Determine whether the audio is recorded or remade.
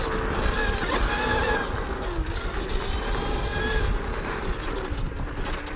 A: recorded